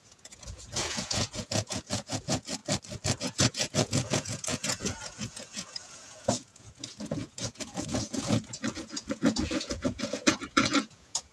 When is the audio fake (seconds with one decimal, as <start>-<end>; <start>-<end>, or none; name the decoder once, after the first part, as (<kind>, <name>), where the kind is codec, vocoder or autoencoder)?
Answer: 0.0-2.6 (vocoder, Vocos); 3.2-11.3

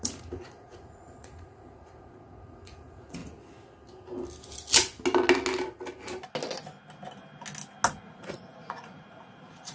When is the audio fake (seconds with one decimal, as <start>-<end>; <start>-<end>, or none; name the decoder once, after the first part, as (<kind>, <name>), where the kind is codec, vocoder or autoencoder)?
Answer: 0.0-3.2 (vocoder, Vocos); 8.0-9.7

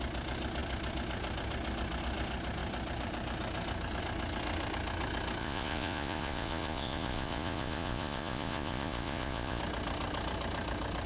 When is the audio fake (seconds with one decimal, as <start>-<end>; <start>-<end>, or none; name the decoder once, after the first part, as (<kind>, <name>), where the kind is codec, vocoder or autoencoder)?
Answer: 5.4-9.6 (vocoder, Vocos)

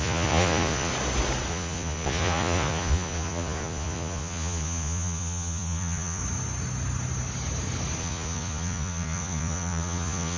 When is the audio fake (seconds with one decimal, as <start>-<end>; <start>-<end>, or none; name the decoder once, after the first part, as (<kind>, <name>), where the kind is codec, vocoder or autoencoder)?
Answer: 0.0-0.9 (vocoder, Vocos); 1.5-6.2; 8.0-10.4